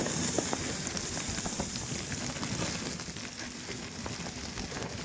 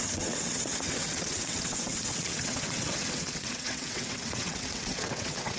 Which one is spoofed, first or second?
second